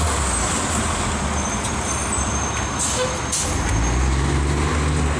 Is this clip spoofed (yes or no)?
no